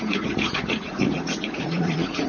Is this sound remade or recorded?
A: remade